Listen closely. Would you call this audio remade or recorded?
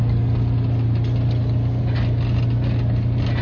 recorded